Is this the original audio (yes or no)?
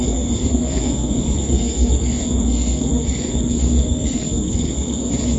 no